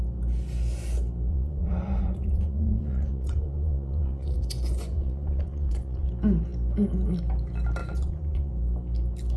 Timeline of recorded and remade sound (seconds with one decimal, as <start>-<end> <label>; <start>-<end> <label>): 0.0-1.3 recorded; 1.3-6.1 remade; 6.1-7.8 recorded; 7.8-8.5 remade; 8.5-9.4 recorded